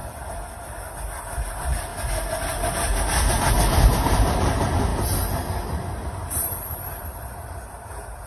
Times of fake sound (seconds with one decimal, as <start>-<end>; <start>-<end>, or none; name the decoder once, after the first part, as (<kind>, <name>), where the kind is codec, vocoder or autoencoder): 1.5-1.9 (vocoder, BigVGAN v2); 3.5-8.3